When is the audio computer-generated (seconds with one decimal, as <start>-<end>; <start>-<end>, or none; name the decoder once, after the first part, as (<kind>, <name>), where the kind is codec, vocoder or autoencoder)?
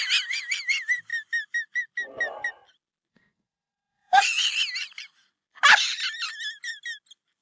3.1-4.2 (codec, SNAC)